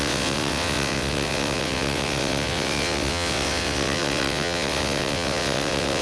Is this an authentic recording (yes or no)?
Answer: no